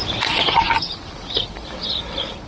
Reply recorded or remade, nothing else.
recorded